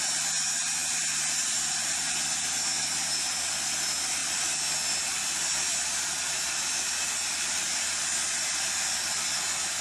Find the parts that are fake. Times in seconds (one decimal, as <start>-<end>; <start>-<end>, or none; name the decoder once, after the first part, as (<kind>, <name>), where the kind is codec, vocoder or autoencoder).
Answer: none